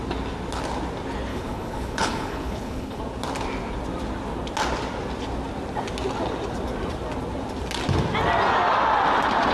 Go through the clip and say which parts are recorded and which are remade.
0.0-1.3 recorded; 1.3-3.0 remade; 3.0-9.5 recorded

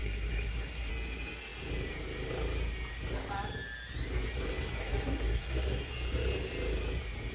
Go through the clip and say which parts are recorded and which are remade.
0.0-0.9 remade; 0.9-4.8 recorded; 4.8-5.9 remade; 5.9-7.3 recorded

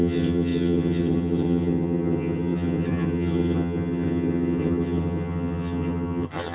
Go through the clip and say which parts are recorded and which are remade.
0.0-6.5 remade

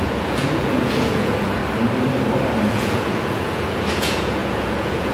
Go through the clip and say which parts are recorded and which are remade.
0.0-1.6 remade; 1.6-2.7 recorded; 2.7-5.1 remade

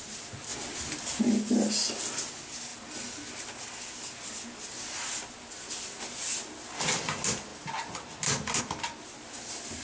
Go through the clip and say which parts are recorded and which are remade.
0.0-9.8 recorded